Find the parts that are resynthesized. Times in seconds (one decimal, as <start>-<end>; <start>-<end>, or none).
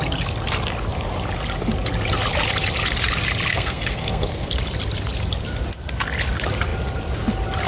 3.5-4.5